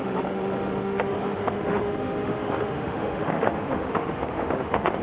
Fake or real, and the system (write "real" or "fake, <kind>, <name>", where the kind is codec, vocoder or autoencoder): fake, autoencoder, DAC-VAE